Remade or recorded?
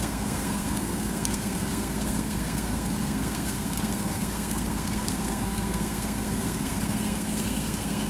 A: remade